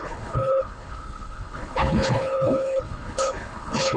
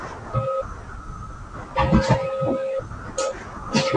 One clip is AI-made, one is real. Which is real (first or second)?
second